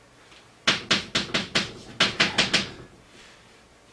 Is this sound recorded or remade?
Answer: recorded